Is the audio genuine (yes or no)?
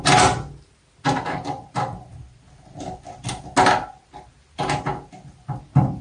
yes